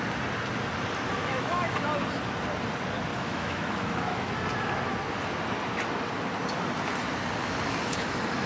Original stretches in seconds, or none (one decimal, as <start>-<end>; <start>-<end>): 0.0-1.2; 1.8-3.1; 4.3-8.5